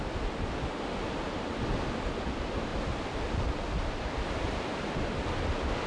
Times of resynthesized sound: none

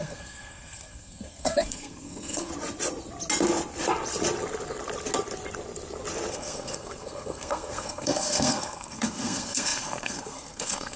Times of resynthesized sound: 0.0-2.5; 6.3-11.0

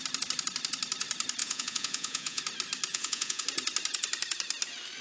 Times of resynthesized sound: 1.4-2.4; 2.9-3.4

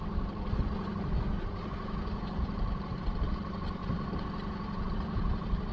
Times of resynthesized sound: none

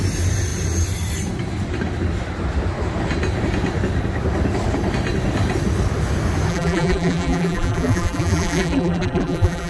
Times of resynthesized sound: 6.5-9.7

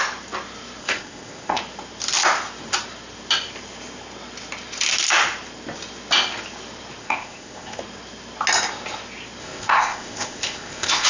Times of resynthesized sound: 0.8-1.6; 7.0-7.8; 9.4-11.1